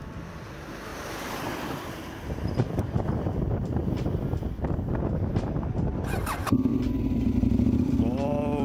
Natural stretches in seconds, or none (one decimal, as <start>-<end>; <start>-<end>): 3.8-5.3; 6.7-7.2